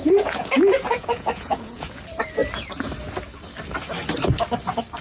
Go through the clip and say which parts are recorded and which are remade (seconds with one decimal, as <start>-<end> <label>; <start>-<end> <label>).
0.0-2.0 remade; 2.0-5.0 recorded